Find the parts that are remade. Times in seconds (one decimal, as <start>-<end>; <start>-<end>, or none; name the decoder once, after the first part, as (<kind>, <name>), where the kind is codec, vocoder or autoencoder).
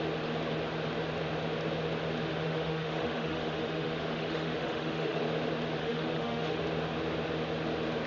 2.3-5.2 (autoencoder, DAC-VAE); 5.8-6.6